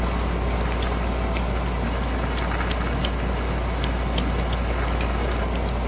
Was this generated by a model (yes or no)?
no